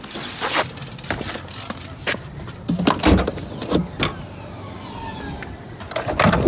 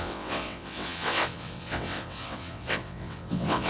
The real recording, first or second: first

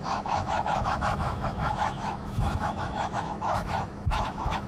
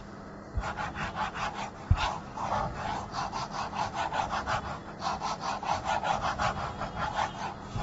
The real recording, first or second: second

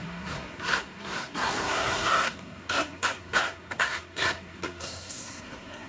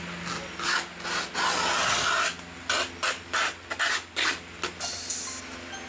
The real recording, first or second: second